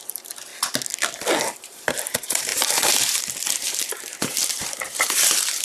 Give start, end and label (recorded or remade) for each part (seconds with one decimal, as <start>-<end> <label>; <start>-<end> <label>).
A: 0.0-0.5 remade; 0.5-1.5 recorded; 1.5-5.6 remade